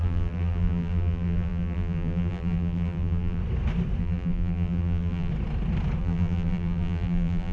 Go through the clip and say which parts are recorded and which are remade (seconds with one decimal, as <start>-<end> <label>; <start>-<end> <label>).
0.0-3.4 remade; 3.4-4.0 recorded; 4.0-5.3 remade; 5.3-6.0 recorded; 6.0-7.5 remade